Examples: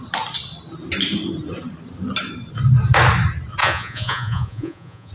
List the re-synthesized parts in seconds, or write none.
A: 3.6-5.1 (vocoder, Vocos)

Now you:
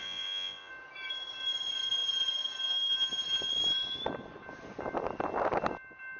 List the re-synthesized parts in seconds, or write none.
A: 0.0-0.7 (vocoder, Vocos)

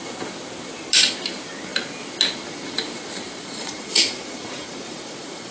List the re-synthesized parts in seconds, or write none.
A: 3.4-5.5 (vocoder, Vocos)

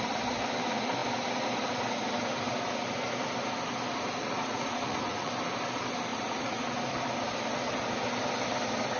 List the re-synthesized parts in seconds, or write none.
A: 4.2-5.3 (vocoder, Vocos); 6.1-6.7